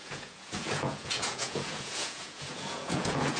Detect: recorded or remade remade